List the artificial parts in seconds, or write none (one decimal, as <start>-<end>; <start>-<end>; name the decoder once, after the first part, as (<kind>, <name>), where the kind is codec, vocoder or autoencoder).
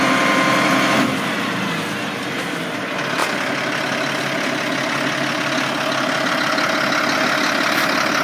none